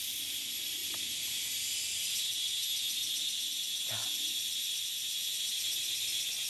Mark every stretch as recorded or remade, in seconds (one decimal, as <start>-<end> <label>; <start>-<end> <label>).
0.0-5.5 recorded; 5.5-6.5 remade